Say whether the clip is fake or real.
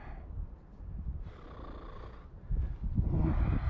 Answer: real